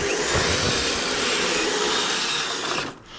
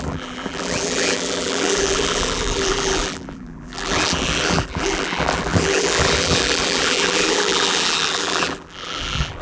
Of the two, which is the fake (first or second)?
second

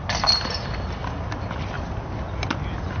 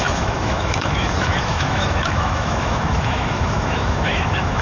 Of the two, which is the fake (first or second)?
second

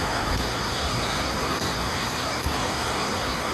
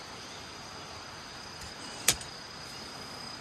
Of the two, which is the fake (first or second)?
first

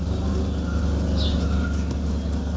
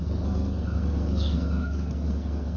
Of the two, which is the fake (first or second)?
second